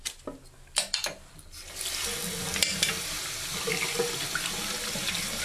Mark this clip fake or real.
real